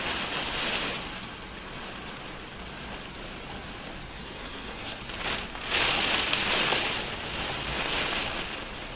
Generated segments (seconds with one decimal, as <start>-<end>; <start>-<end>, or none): 4.1-5.0